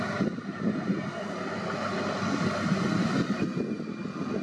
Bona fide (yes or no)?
yes